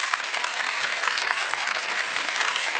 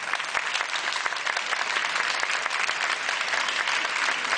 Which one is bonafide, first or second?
second